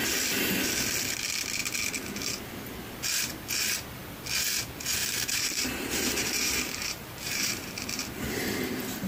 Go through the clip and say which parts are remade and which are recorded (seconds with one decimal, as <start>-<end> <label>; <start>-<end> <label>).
0.0-5.0 recorded; 5.0-7.7 remade; 7.7-9.1 recorded